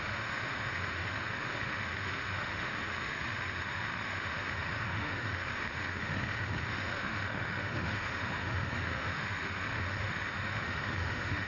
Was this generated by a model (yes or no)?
yes